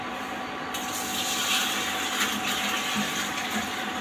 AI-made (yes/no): no